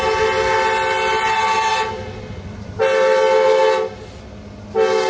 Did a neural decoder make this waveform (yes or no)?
no